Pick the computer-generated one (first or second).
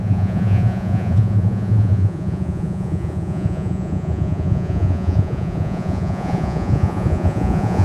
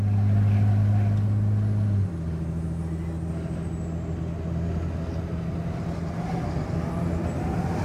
first